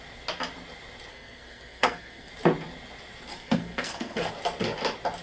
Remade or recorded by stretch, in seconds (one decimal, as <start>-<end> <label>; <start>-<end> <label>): 0.0-1.1 recorded; 1.1-2.3 remade; 2.3-3.3 recorded; 3.3-4.3 remade; 4.3-5.2 recorded